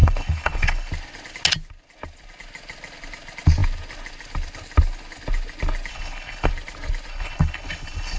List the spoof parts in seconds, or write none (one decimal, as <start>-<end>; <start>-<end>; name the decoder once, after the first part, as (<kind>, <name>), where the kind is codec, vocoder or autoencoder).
0.0-0.9 (codec, HILCodec); 5.9-6.5; 7.1-8.2